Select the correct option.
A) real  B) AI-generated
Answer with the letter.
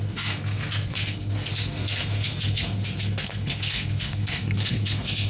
B